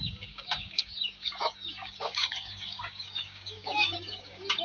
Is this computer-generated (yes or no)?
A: yes